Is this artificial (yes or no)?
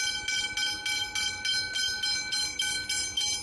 no